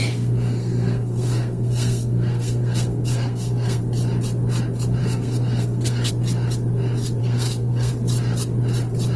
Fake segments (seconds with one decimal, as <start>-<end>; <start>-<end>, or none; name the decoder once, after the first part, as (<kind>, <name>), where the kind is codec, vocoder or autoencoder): 0.0-3.8 (codec, SNAC); 5.0-6.1; 7.2-7.9

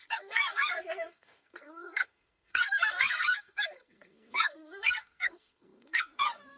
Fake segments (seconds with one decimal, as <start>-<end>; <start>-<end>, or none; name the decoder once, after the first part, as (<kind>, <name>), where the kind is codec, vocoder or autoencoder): 0.0-6.6 (codec, SNAC)